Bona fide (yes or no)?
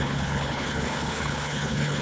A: no